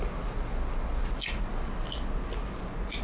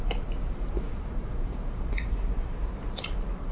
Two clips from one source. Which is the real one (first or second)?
first